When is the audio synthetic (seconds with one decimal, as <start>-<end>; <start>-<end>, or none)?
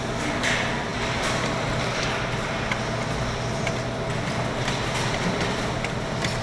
none